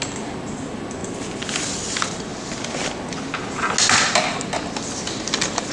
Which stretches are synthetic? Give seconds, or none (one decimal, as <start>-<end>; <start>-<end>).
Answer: none